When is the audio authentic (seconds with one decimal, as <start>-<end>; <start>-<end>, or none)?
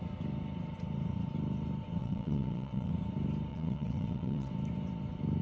0.0-2.0; 2.9-3.5; 4.5-5.4